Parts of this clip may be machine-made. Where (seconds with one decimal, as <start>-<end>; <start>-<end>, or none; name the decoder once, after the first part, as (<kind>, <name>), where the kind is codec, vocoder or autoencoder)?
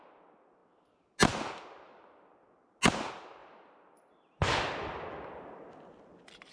none